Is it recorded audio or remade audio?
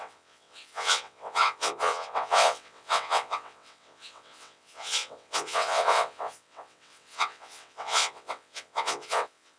remade